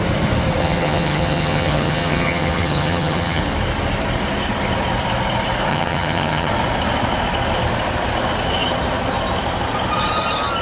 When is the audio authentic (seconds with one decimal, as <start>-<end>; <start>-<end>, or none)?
0.0-0.6; 3.4-5.7; 6.5-10.6